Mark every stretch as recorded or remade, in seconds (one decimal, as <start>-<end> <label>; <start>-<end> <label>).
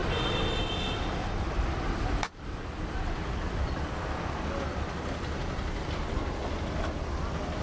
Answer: 0.0-7.6 recorded